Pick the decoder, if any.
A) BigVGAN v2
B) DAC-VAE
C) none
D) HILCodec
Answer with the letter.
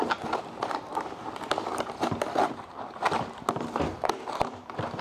C